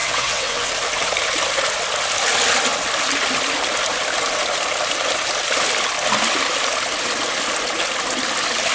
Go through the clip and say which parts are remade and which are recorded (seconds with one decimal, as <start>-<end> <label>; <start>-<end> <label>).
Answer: 0.0-0.7 remade; 0.7-8.7 recorded